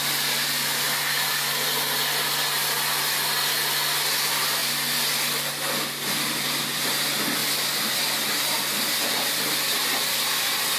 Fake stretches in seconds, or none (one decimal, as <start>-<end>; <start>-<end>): none